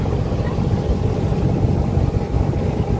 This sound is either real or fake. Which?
real